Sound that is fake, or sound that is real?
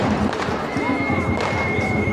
real